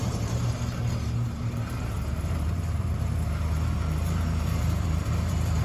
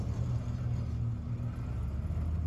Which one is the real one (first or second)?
second